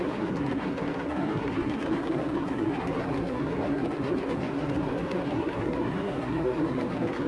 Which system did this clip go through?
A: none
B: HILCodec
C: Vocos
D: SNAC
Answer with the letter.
D